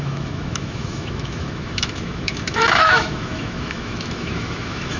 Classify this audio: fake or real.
fake